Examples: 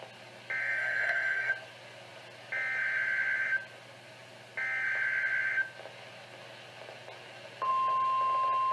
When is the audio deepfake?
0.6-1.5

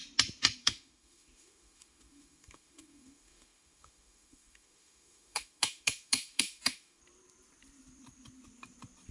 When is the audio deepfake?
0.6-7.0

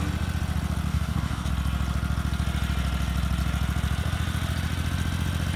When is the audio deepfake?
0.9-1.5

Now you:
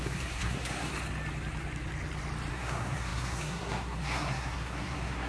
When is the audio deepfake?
0.0-0.9; 2.5-5.3

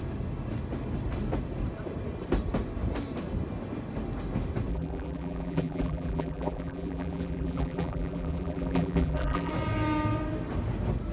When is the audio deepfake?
4.7-9.5

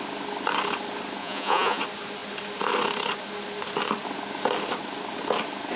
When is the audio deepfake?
1.2-1.8

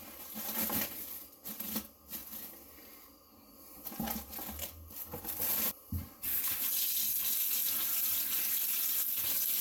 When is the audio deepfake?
none

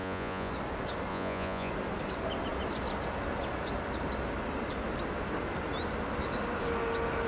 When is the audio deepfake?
0.0-0.5; 1.1-1.7